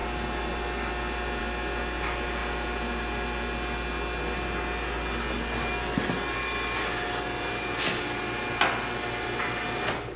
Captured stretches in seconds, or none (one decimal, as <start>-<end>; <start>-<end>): 0.0-10.2